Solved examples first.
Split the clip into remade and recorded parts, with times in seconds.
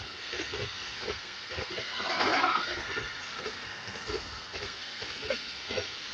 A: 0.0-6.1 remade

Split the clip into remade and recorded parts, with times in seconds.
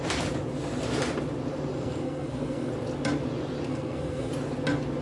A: 0.0-1.7 recorded; 1.7-2.7 remade; 2.7-3.7 recorded; 3.7-4.3 remade; 4.3-5.0 recorded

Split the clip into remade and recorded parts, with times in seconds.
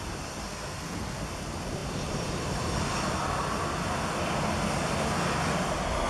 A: 0.0-0.5 recorded; 0.5-1.2 remade; 1.2-6.1 recorded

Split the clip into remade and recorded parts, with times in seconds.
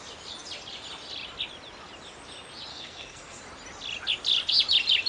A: 0.0-2.7 recorded; 2.7-3.4 remade; 3.4-5.1 recorded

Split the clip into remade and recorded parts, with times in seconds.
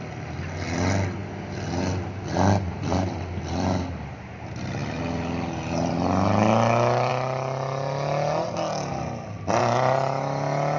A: 0.0-10.8 recorded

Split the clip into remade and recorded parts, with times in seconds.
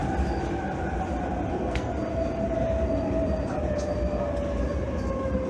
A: 0.0-1.5 recorded; 1.5-1.9 remade; 1.9-5.5 recorded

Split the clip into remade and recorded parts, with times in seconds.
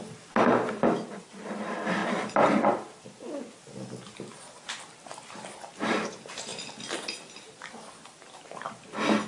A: 0.0-9.3 recorded